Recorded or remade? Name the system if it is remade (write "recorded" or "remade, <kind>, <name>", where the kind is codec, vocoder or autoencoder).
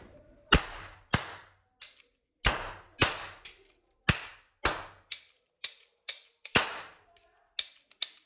recorded